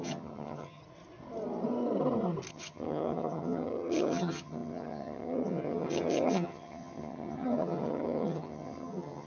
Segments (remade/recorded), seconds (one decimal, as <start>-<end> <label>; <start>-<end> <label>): 0.0-0.8 remade; 0.8-2.5 recorded; 2.5-9.3 remade